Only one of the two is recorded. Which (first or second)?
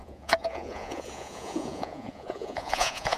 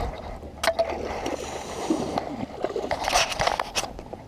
second